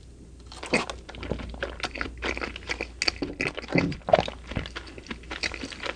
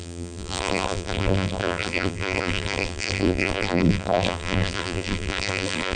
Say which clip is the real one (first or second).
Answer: first